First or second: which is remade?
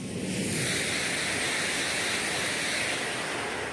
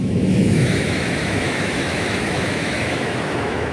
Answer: second